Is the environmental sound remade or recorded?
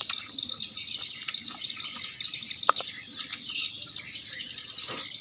recorded